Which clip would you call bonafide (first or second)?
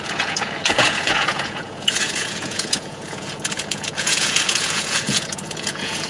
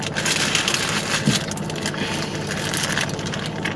second